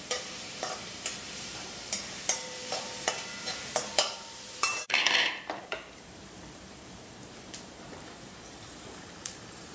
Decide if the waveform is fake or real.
fake